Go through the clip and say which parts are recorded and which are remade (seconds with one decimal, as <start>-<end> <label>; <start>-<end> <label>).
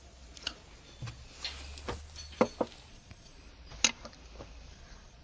0.0-0.6 remade; 0.6-2.9 recorded; 2.9-3.3 remade; 3.3-4.7 recorded; 4.7-5.2 remade